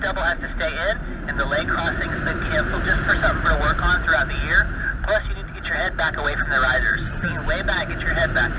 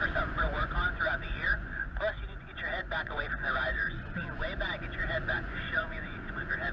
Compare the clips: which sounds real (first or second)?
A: first